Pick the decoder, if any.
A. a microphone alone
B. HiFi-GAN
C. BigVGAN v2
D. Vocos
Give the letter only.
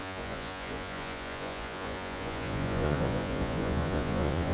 D